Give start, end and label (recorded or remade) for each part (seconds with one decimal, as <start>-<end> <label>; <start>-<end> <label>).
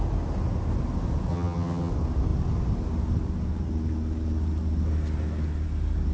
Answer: 0.0-1.3 recorded; 1.3-1.9 remade; 1.9-6.1 recorded